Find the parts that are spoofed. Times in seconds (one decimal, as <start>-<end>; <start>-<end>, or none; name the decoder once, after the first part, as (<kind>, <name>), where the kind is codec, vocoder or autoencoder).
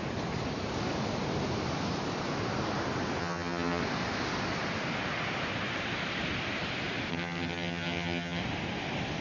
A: 3.2-3.8 (vocoder, HiFi-GAN); 7.1-8.4